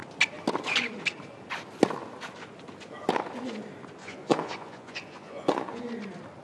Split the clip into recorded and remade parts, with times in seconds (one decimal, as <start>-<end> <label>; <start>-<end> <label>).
0.0-4.0 recorded; 4.0-5.8 remade; 5.8-6.4 recorded